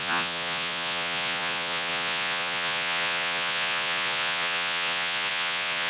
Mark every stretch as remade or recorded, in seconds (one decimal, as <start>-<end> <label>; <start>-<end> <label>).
0.0-5.9 remade